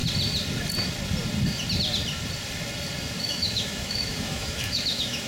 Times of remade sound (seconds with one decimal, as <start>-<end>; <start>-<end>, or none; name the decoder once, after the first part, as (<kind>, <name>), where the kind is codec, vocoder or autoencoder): 3.2-5.3 (autoencoder, DAC-VAE)